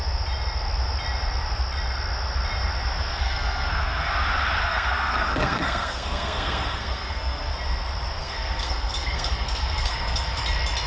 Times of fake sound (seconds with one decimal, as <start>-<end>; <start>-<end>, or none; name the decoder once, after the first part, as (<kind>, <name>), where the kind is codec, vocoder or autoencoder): 3.2-4.1 (codec, SNAC); 4.6-7.5; 8.2-10.4